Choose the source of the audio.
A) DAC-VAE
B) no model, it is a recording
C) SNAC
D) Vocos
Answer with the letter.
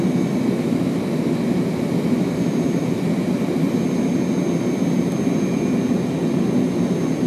B